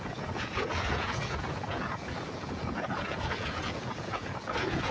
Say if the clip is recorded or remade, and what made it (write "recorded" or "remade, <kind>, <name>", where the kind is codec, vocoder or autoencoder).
remade, vocoder, Vocos